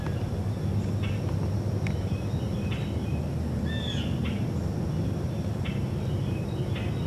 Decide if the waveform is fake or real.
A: real